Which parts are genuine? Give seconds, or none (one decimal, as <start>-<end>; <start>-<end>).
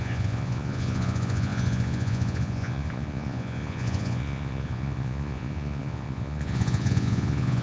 none